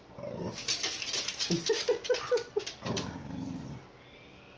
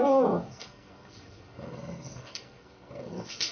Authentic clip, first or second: first